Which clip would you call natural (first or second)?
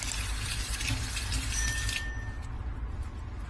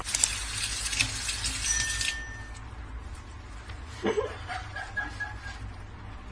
second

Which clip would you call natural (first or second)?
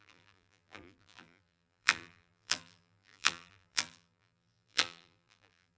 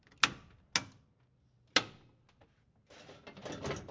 second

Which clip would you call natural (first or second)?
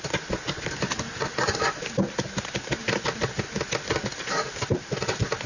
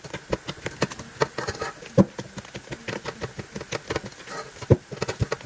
second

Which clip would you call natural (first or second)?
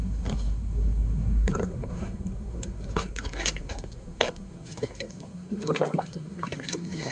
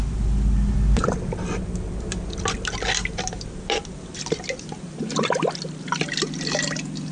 second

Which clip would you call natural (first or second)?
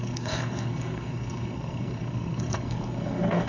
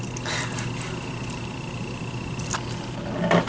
second